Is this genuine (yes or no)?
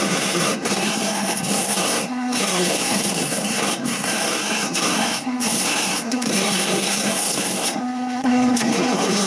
no